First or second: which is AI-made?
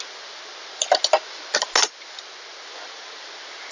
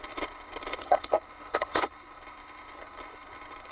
second